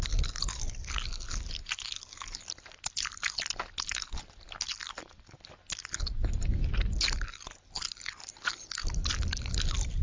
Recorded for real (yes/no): yes